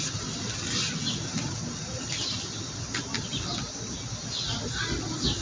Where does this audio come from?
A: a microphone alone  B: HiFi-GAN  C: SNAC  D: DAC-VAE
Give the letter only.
A